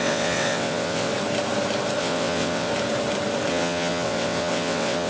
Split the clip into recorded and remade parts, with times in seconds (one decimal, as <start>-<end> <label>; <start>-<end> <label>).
0.0-1.1 remade; 1.1-2.0 recorded; 2.0-2.7 remade; 2.7-3.5 recorded; 3.5-5.1 remade